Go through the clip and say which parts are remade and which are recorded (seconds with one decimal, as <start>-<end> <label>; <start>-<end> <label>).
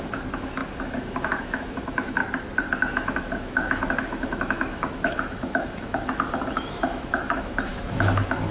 0.0-2.2 remade; 2.2-2.8 recorded; 2.8-8.5 remade